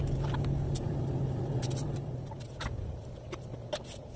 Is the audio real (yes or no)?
yes